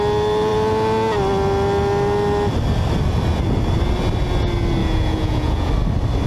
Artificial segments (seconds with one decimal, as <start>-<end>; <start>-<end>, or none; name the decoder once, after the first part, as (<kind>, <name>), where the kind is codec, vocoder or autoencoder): 4.8-5.7 (vocoder, Vocos)